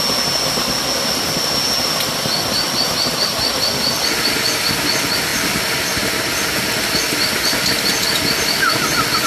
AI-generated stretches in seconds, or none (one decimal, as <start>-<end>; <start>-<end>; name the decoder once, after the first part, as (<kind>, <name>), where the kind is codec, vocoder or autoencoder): none